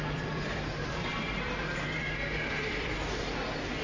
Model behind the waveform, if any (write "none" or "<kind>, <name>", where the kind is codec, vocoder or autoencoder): vocoder, BigVGAN v2